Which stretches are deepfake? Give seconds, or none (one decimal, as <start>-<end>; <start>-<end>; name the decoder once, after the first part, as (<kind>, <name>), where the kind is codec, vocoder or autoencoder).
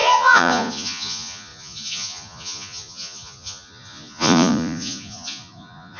0.0-6.0 (vocoder, Vocos)